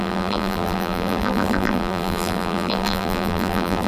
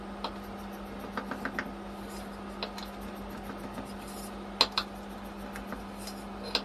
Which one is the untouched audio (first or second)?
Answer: second